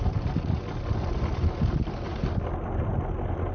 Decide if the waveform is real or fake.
real